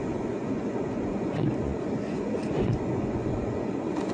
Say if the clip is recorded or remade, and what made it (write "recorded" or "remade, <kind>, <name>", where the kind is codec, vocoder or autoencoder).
remade, vocoder, Vocos